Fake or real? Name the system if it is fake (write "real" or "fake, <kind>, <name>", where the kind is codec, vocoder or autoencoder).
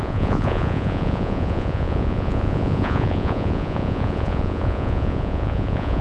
fake, vocoder, Vocos